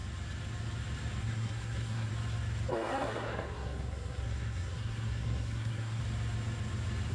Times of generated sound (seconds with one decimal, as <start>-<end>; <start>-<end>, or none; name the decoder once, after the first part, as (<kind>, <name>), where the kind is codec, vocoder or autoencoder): 1.2-2.1 (codec, SNAC); 2.7-6.0